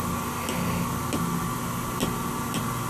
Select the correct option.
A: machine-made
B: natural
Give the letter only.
B